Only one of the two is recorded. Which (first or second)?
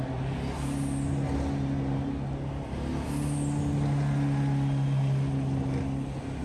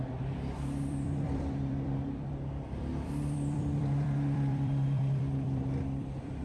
first